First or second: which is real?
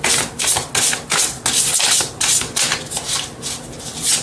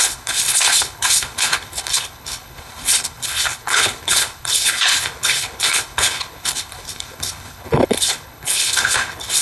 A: first